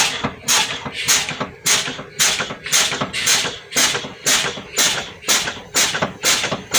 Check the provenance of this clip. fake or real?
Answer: real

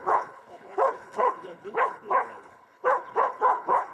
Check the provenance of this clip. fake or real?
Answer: fake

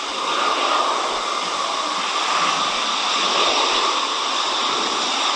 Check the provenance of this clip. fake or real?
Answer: fake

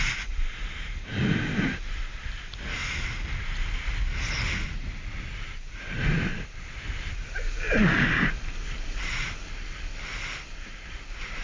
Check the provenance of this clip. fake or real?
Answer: real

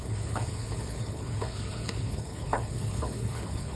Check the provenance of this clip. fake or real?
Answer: fake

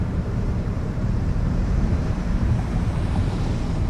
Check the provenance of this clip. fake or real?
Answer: fake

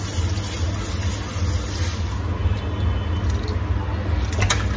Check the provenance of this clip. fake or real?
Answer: real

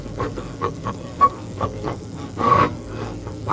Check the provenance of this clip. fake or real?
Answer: fake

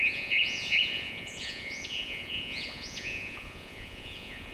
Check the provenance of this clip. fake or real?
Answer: fake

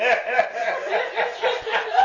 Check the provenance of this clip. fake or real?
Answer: fake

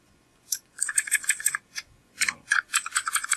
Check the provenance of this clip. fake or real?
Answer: fake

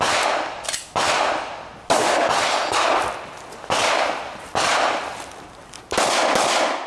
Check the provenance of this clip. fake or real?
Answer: real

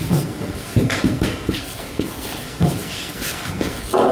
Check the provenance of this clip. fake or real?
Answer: fake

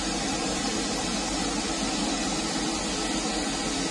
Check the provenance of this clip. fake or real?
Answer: real